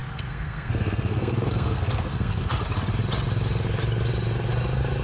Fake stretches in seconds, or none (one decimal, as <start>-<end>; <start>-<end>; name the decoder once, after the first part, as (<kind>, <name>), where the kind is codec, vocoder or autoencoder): 0.0-2.6 (codec, SNAC)